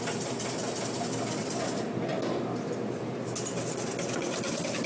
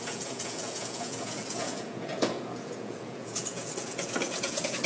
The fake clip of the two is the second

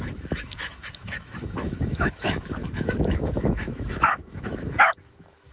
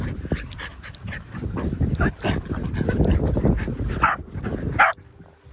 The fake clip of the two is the first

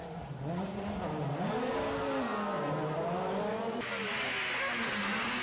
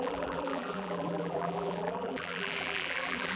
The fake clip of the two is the second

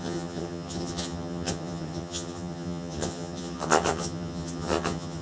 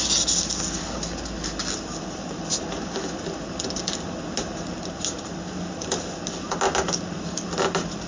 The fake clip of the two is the first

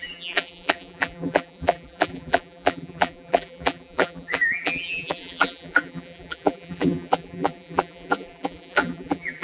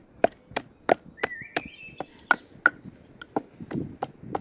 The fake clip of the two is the first